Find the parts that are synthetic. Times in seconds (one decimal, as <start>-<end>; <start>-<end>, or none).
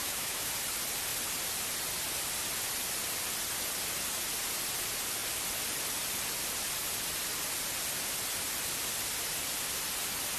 0.0-0.5